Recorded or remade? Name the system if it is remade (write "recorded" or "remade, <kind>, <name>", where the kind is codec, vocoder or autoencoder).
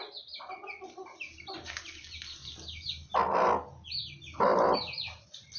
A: recorded